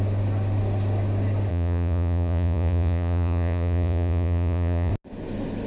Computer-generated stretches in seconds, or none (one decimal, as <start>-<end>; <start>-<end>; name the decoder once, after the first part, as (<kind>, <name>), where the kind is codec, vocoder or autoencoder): 1.5-4.9 (vocoder, Vocos)

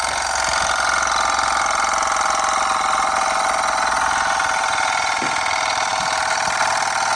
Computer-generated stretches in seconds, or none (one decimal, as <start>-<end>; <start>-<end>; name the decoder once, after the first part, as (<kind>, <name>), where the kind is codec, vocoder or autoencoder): none

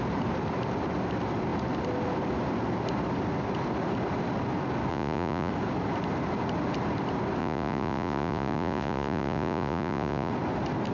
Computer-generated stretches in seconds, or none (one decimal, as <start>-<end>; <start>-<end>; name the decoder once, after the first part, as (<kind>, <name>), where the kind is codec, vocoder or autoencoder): 4.9-5.5 (vocoder, Vocos); 7.4-10.3

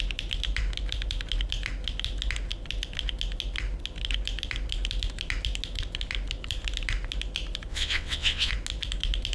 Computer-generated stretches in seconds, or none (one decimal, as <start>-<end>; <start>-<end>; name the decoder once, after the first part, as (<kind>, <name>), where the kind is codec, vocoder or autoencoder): 7.7-8.5 (vocoder, WaveNeXt)